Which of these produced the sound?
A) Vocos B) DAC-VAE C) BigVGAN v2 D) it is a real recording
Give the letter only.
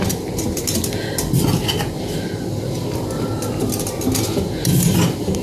D